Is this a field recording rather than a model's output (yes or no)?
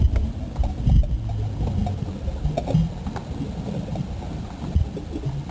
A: yes